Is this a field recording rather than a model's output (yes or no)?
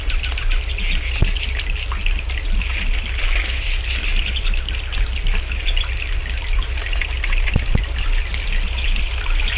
yes